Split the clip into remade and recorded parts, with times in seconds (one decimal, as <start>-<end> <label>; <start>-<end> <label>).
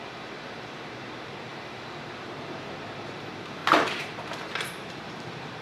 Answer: 0.0-5.6 remade